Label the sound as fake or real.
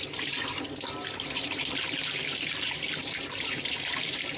fake